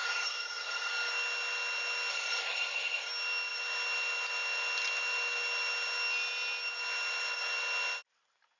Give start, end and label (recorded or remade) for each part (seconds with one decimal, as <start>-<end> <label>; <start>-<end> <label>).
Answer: 0.0-0.9 remade; 0.9-2.1 recorded; 2.1-3.1 remade; 3.1-8.6 recorded